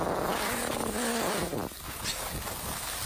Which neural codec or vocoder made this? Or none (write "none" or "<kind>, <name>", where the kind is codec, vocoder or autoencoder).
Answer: none